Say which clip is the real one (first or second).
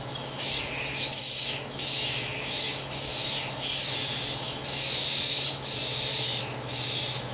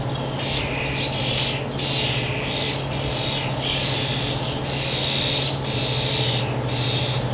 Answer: second